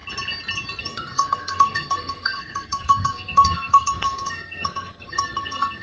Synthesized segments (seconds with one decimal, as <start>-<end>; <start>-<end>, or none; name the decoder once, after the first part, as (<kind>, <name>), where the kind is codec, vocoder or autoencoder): 0.8-5.8 (codec, SNAC)